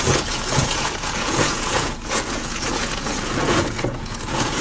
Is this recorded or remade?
remade